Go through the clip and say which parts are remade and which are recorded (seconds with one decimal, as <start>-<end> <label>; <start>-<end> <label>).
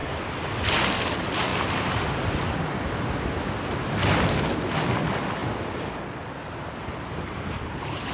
0.0-8.1 recorded